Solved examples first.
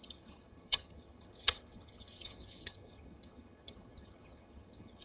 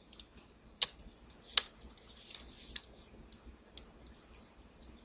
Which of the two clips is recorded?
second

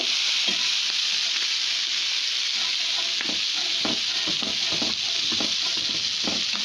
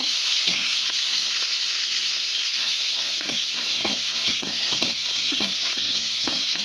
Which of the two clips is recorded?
first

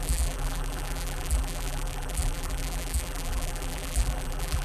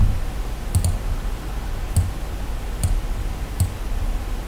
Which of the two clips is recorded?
second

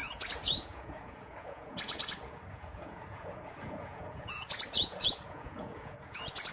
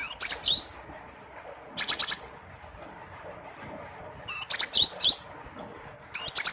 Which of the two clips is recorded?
second